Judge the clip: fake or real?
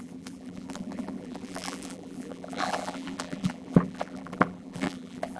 fake